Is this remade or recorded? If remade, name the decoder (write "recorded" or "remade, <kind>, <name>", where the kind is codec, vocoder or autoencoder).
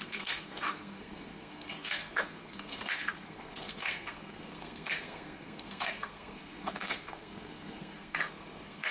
remade, codec, SNAC